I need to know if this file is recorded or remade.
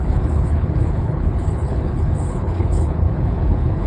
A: remade